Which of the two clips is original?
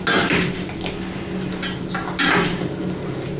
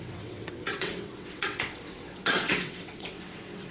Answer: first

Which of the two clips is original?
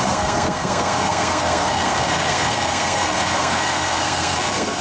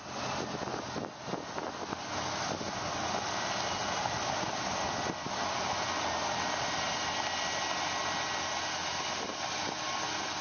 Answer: second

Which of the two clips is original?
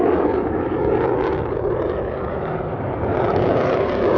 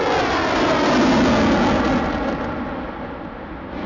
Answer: second